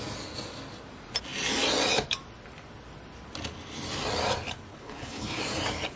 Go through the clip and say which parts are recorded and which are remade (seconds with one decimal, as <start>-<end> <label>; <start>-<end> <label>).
0.0-4.7 recorded; 4.7-5.4 remade; 5.4-6.0 recorded